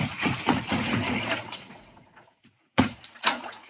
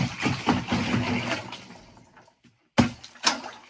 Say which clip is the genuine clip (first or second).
second